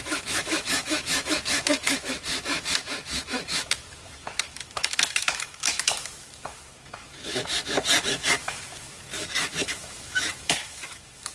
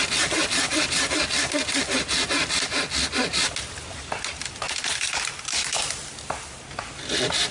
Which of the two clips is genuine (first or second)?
second